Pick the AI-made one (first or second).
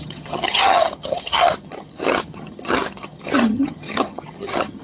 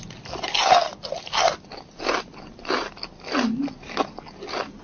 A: first